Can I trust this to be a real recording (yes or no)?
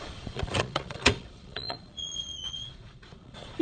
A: no